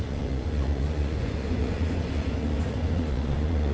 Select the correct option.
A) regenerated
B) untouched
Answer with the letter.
A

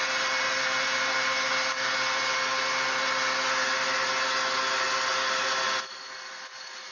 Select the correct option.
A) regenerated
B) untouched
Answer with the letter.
B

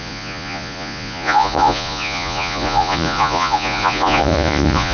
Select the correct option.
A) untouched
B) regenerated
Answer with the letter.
B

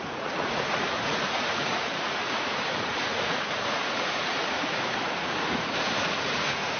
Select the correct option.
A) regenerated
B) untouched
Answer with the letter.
A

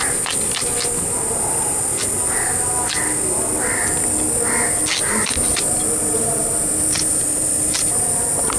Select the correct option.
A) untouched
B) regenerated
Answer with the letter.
A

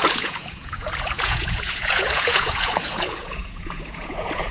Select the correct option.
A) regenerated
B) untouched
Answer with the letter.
A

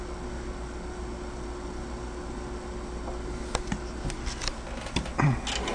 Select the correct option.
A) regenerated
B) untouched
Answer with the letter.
B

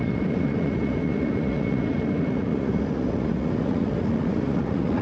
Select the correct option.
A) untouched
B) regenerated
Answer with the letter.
B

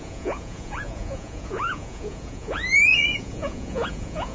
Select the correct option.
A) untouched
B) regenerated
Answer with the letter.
B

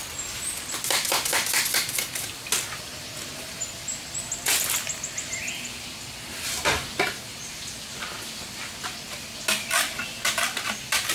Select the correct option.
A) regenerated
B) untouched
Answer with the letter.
B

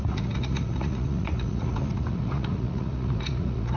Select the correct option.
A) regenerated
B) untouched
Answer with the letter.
A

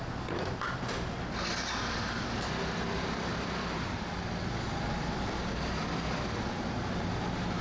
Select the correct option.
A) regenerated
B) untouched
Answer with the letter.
B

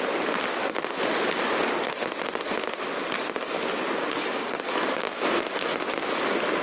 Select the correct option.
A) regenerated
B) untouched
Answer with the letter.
B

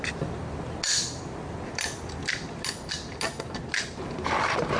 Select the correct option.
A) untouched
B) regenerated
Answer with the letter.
A